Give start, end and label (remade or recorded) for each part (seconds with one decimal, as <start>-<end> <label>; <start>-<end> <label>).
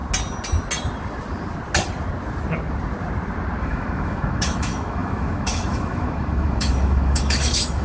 0.0-3.6 recorded; 3.6-7.8 remade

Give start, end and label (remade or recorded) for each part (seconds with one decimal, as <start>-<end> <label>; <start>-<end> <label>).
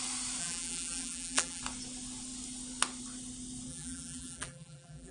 0.0-0.4 recorded; 0.4-1.6 remade; 1.6-3.7 recorded; 3.7-5.1 remade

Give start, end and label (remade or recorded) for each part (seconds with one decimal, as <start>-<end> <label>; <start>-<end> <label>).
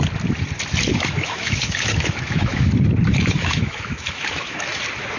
0.0-0.9 recorded; 0.9-2.7 remade; 2.7-3.1 recorded; 3.1-4.8 remade; 4.8-5.2 recorded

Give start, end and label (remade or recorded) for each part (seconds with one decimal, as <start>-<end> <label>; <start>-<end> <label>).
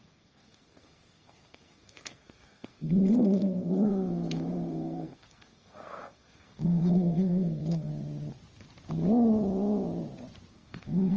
0.0-7.9 remade; 7.9-10.5 recorded; 10.5-11.2 remade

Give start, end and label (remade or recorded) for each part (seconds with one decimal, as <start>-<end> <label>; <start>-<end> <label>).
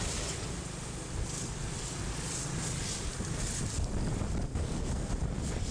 0.0-4.6 recorded; 4.6-5.1 remade; 5.1-5.7 recorded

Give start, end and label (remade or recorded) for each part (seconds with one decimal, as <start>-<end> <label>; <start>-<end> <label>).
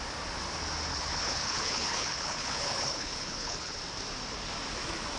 0.0-0.9 recorded; 0.9-3.8 remade; 3.8-5.2 recorded